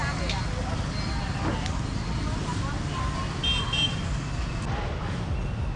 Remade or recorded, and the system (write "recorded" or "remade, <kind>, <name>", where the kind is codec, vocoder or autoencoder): recorded